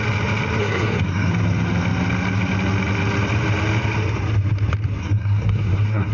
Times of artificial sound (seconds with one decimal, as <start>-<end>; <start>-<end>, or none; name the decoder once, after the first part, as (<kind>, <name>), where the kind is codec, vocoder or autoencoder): 0.6-1.3 (codec, SNAC); 5.0-6.1